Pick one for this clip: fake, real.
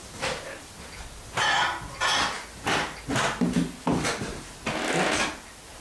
real